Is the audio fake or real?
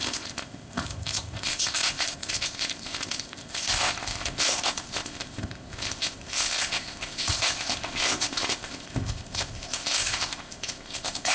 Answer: fake